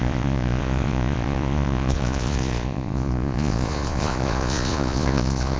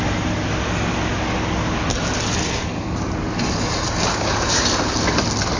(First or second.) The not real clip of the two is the first